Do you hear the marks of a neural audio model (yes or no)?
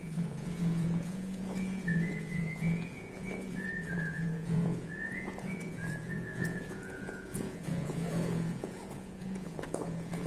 yes